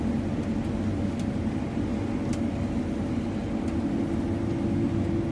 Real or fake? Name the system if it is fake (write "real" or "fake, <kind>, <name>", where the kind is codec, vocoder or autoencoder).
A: real